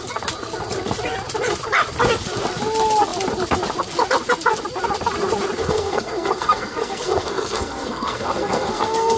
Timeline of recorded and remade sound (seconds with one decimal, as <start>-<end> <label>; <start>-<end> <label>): 0.0-5.6 recorded; 5.6-9.2 remade